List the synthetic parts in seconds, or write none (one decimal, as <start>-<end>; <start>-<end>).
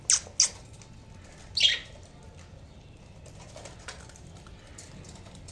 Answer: 1.4-4.3